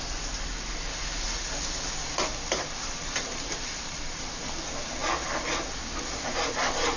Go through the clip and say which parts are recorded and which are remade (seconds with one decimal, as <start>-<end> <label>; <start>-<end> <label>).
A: 0.0-2.3 recorded; 2.3-4.4 remade; 4.4-7.0 recorded